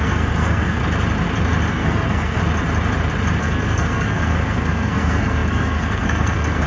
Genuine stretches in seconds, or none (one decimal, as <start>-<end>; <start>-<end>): 0.8-1.7; 2.4-3.4